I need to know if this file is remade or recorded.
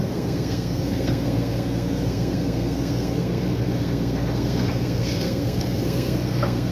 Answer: remade